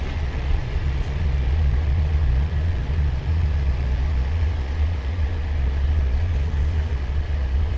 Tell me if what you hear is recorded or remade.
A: remade